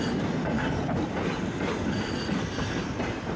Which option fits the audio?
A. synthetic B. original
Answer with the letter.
B